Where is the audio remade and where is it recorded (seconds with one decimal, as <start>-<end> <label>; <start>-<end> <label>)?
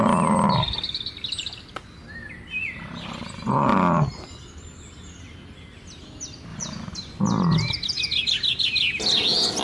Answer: 0.0-6.5 recorded; 6.5-7.2 remade; 7.2-9.6 recorded